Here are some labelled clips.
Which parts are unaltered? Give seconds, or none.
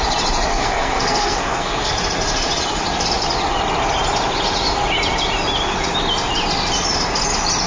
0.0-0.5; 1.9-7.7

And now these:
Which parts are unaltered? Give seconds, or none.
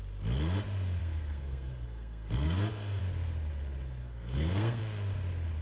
0.0-1.0; 3.0-4.0; 4.8-5.6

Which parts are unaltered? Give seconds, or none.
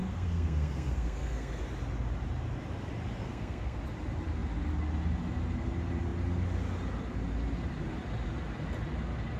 1.6-3.2; 3.8-9.4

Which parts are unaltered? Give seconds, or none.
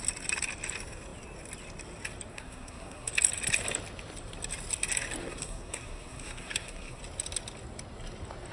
0.0-2.3; 3.1-5.2; 7.0-8.5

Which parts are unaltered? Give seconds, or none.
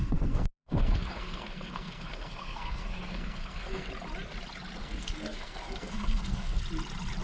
3.9-4.8; 6.6-7.2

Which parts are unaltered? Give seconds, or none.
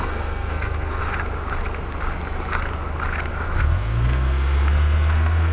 1.0-3.6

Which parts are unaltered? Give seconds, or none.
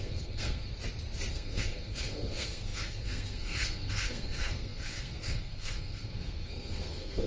0.7-1.3